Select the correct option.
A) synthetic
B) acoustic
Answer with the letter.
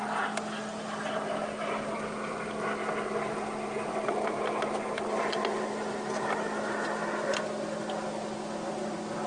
B